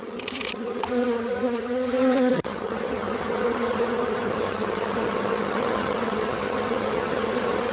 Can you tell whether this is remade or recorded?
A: remade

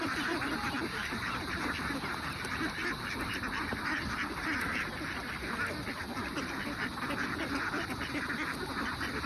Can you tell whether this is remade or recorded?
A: recorded